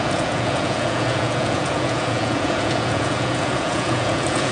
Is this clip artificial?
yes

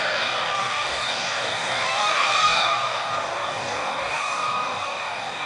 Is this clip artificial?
yes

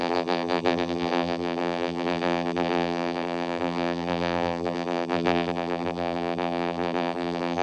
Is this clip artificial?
yes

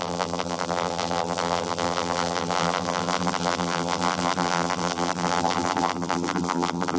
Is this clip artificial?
yes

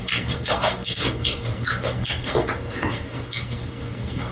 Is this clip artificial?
yes